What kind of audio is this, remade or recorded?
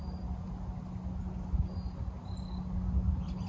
recorded